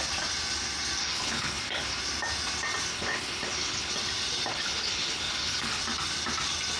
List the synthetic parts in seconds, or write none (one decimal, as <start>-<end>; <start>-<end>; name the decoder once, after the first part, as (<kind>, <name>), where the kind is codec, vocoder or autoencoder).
1.0-2.0 (codec, HILCodec); 2.9-3.9; 4.5-5.8